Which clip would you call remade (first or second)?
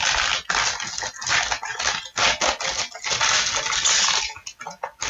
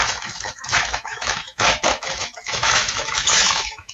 second